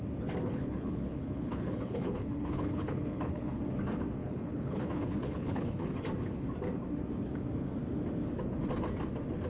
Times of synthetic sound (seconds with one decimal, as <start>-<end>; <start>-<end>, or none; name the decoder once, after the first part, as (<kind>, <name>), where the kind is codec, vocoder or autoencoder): 0.5-3.6 (codec, HILCodec); 4.2-5.9